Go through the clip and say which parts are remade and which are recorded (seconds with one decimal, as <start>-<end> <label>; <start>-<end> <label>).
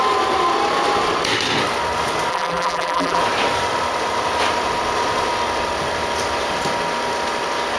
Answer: 0.0-2.3 recorded; 2.3-3.2 remade; 3.2-7.8 recorded